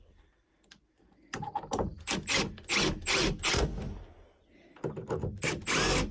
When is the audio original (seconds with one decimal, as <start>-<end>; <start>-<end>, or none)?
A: 0.0-6.1